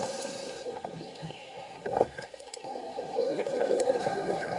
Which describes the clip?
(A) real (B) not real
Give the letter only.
B